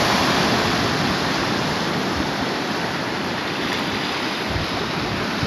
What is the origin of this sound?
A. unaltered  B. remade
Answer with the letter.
A